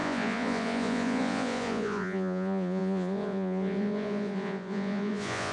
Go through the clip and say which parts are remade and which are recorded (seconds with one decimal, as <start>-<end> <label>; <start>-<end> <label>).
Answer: 0.0-5.5 remade